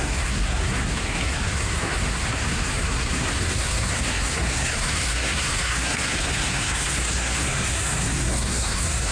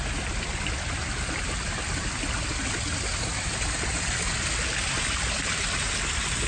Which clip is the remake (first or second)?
first